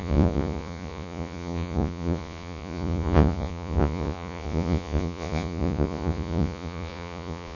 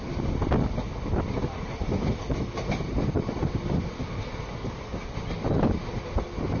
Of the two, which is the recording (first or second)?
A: second